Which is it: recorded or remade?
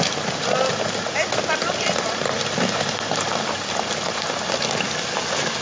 recorded